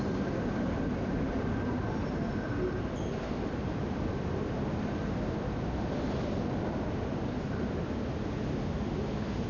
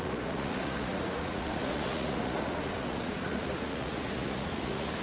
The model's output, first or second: second